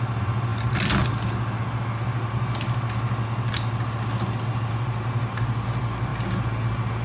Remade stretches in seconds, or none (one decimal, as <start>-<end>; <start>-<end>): none